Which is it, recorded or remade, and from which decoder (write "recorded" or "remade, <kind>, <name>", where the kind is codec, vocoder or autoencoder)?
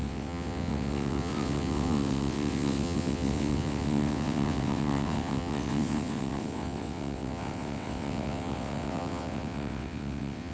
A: remade, vocoder, WaveNeXt